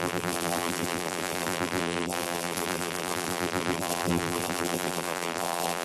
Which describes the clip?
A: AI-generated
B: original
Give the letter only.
A